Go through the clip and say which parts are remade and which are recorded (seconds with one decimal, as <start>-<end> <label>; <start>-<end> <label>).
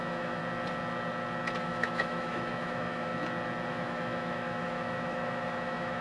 0.0-0.4 remade; 0.4-1.6 recorded; 1.6-3.1 remade; 3.1-3.7 recorded; 3.7-6.0 remade